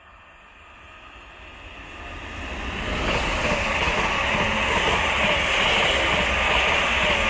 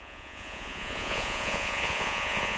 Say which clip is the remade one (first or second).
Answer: second